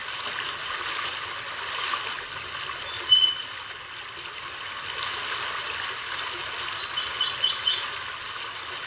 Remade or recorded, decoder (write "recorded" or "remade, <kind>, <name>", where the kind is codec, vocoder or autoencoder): recorded